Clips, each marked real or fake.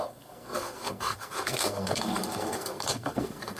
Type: fake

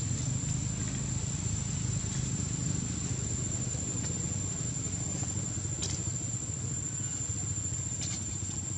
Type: real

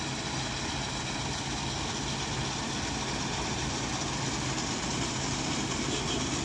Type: real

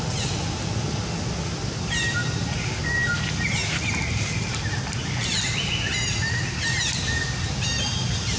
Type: real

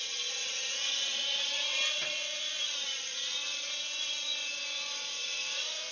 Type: fake